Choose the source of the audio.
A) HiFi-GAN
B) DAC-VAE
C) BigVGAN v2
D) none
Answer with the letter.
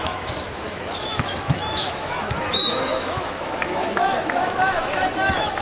B